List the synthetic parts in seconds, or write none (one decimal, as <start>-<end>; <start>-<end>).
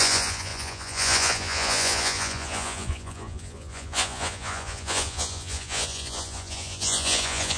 0.0-7.6